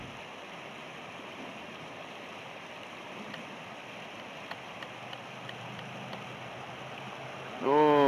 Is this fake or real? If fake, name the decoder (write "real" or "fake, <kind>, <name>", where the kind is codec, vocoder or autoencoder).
fake, vocoder, BigVGAN v2